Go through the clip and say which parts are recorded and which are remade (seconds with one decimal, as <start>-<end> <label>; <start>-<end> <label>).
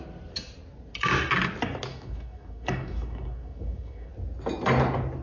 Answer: 0.0-1.9 recorded; 1.9-4.1 remade; 4.1-5.2 recorded